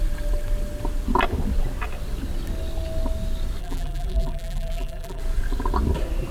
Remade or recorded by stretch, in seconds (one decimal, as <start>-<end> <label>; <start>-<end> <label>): 0.0-3.6 recorded; 3.6-5.2 remade; 5.2-6.3 recorded